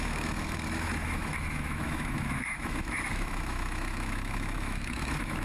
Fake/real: fake